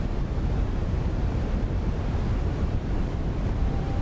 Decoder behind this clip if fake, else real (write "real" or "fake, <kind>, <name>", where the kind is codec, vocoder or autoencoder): fake, vocoder, BigVGAN v2